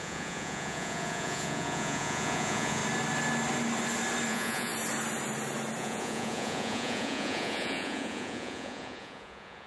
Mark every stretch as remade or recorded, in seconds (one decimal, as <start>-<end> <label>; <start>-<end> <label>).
0.0-2.8 remade; 2.8-4.3 recorded; 4.3-4.7 remade; 4.7-5.8 recorded; 5.8-9.7 remade